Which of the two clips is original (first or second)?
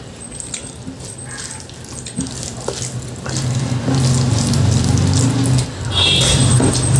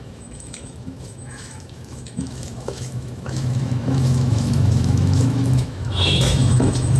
first